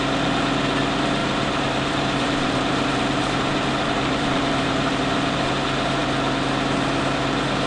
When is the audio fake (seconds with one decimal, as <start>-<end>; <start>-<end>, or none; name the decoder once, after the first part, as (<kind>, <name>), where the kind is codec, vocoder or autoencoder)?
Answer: 1.2-5.5 (vocoder, BigVGAN v2)